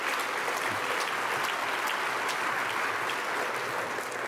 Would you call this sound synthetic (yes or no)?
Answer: no